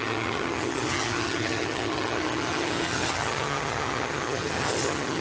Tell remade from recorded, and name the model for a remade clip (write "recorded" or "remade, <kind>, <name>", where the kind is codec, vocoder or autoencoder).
remade, vocoder, HiFi-GAN